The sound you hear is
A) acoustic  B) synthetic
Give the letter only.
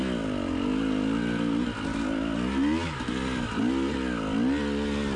A